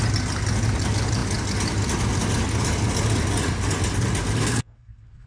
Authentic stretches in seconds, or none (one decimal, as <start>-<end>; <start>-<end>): 0.0-4.4